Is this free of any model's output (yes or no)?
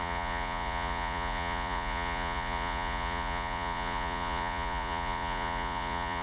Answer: no